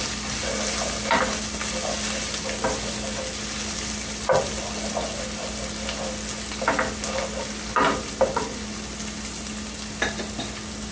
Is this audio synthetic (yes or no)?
no